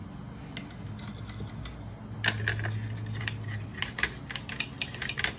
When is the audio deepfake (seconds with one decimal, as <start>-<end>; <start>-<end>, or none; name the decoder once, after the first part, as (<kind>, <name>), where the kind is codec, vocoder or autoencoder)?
none